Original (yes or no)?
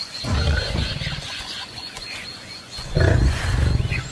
no